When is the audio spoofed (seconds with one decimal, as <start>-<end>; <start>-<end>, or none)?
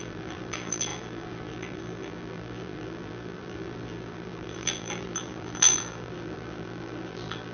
0.0-7.5